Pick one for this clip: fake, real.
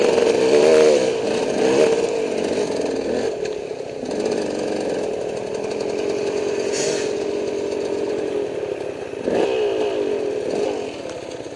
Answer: real